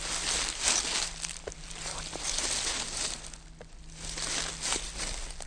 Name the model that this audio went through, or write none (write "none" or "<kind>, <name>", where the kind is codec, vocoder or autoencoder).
none